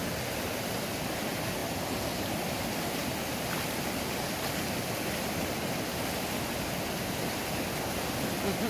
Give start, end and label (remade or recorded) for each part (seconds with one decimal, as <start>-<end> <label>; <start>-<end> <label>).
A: 0.0-8.7 recorded